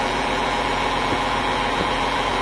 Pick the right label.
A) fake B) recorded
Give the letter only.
A